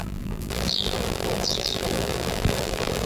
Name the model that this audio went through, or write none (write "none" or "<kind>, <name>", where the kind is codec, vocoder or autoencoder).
vocoder, BigVGAN v2